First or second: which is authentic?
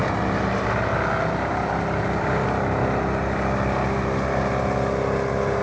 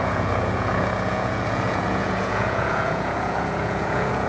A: first